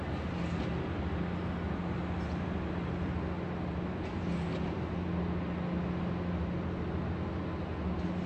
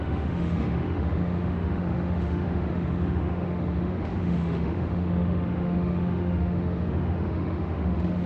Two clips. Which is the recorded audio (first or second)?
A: first